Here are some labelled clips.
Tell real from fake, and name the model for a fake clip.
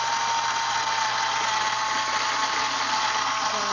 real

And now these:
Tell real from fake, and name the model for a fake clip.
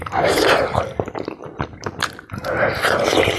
real